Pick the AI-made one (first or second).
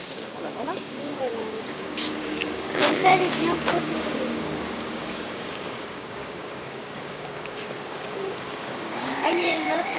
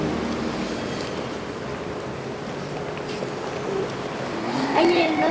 first